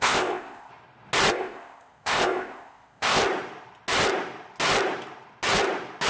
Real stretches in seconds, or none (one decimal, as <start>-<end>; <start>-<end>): 0.7-1.3; 3.2-6.1